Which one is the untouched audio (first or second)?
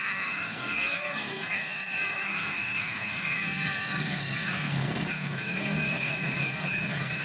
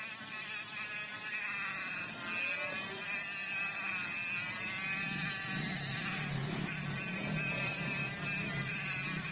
second